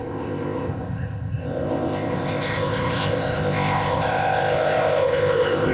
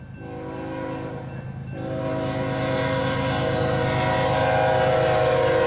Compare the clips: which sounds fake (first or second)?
first